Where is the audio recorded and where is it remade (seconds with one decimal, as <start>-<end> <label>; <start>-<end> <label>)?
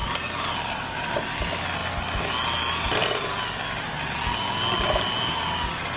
0.0-6.0 recorded